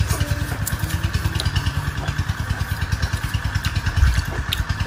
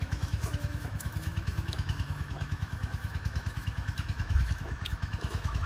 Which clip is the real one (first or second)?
first